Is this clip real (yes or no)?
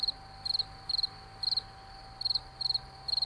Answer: yes